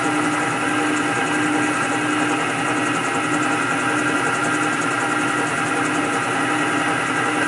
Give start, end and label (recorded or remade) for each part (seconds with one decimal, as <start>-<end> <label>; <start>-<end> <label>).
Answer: 0.0-7.5 recorded